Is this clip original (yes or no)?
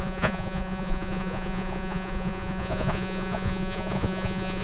no